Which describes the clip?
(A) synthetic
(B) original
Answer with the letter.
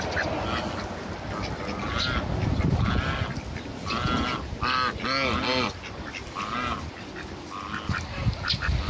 B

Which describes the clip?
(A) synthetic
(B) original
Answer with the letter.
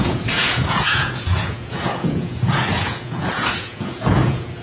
A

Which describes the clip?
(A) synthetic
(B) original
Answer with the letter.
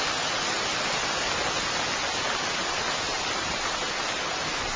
B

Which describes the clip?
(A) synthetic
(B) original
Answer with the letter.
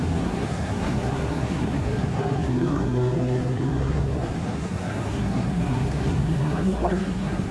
A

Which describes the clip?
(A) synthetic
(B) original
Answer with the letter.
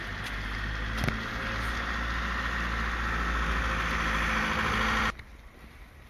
B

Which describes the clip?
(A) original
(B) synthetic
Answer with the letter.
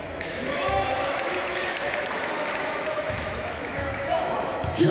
B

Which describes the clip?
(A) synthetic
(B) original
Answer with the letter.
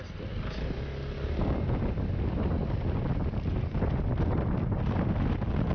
B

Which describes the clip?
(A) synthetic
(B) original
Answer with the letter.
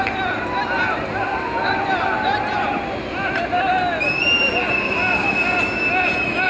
B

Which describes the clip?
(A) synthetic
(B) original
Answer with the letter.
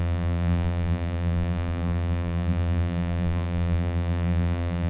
A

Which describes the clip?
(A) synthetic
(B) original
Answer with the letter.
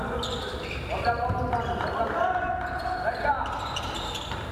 B